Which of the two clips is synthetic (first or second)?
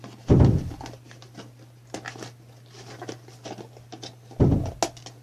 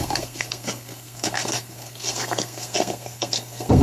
second